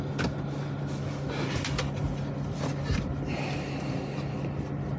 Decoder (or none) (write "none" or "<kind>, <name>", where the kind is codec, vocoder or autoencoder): none